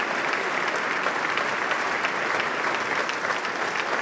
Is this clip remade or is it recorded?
remade